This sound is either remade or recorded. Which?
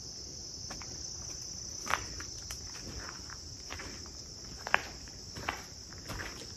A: remade